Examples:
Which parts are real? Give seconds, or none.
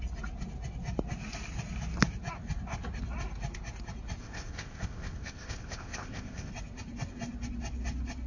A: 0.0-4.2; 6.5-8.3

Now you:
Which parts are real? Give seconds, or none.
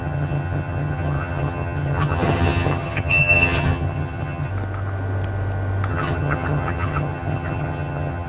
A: 4.5-5.9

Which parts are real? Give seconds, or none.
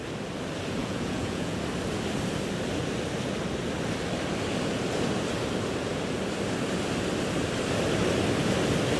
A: 0.0-0.8; 1.6-9.0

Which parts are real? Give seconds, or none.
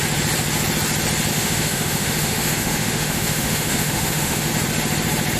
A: 0.0-1.3; 4.5-5.4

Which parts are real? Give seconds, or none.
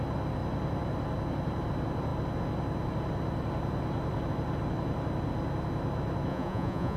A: 0.0-6.3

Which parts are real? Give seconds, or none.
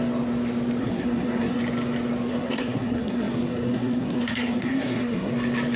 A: 0.0-0.8; 1.6-2.3; 5.3-5.8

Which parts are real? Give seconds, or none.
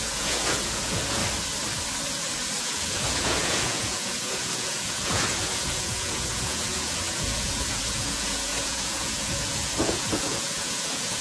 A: 1.2-2.6